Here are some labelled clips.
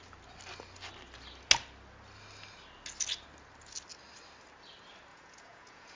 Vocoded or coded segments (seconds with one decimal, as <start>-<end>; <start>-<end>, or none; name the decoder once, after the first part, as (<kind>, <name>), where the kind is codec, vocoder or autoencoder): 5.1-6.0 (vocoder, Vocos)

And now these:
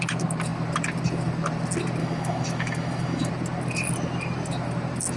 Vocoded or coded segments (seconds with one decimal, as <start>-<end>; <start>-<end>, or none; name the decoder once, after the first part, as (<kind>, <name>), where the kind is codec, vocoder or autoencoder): 2.0-3.3 (autoencoder, DAC-VAE)

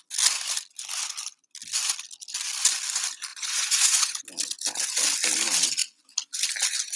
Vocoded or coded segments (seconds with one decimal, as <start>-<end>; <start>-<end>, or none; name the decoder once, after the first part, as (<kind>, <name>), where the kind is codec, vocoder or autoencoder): 3.3-4.2 (vocoder, Vocos)